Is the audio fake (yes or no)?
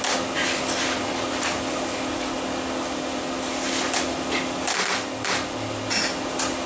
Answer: no